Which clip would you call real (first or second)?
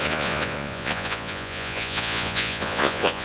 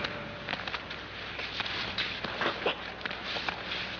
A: second